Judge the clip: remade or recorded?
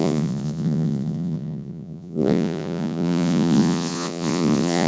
remade